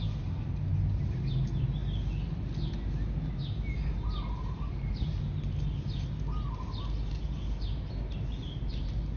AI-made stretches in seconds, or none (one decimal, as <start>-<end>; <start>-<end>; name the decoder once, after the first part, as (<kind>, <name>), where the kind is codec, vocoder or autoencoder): none